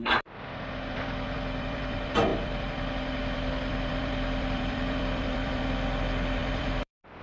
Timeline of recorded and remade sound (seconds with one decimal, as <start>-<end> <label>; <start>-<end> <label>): 0.0-7.2 remade